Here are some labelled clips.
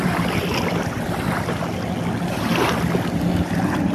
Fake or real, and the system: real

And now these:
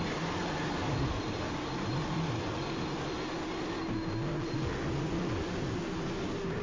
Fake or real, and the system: fake, vocoder, BigVGAN v2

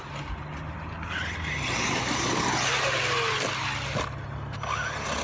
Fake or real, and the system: real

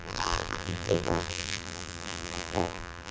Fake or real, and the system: fake, vocoder, BigVGAN v2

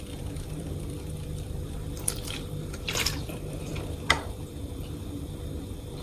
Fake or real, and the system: fake, vocoder, BigVGAN v2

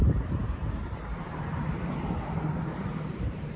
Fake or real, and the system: fake, vocoder, BigVGAN v2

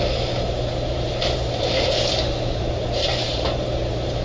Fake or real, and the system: fake, vocoder, BigVGAN v2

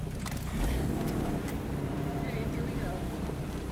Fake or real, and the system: fake, vocoder, BigVGAN v2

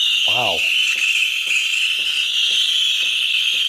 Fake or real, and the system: real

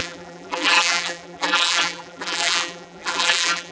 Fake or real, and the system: fake, vocoder, BigVGAN v2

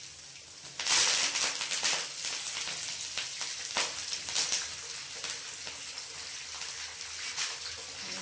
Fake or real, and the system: real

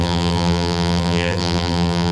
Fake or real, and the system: fake, vocoder, BigVGAN v2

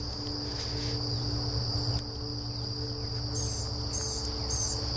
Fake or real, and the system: real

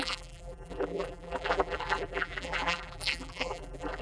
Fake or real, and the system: fake, vocoder, BigVGAN v2